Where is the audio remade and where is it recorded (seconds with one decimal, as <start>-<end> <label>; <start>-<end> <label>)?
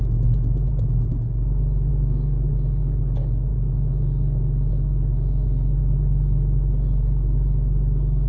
0.0-1.9 recorded; 1.9-2.5 remade; 2.5-8.3 recorded